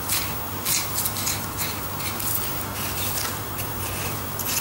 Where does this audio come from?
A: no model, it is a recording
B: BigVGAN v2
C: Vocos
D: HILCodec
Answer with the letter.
A